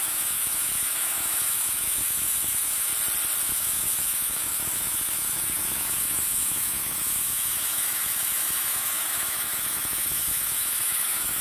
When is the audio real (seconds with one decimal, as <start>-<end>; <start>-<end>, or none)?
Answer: 2.9-3.4

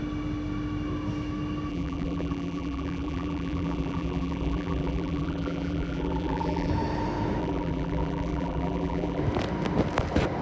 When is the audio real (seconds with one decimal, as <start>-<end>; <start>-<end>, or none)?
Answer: 0.0-1.7; 6.7-7.4; 9.2-10.4

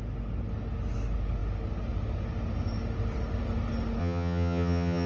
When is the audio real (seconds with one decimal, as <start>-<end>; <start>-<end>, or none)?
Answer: 0.0-4.0